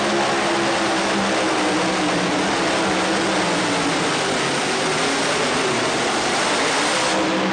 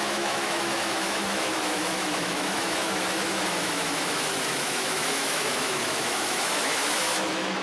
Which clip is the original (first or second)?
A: first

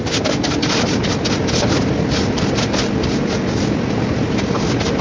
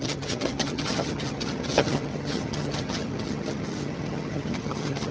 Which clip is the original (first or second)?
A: first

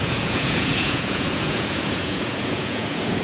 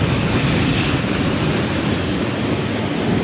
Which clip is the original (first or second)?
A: second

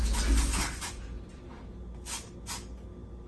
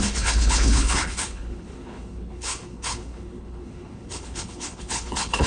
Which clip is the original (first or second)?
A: first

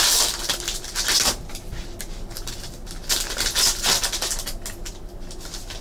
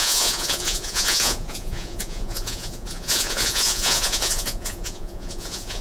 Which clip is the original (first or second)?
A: first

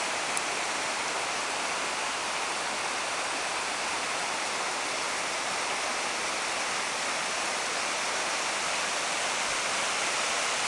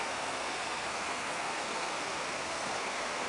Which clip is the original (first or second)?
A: first